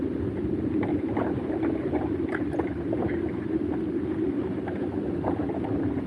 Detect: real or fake real